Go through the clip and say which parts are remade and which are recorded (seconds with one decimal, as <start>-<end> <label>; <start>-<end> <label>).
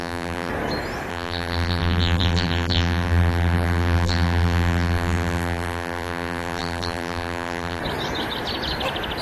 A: 0.0-0.5 remade; 0.5-1.1 recorded; 1.1-7.8 remade; 7.8-9.2 recorded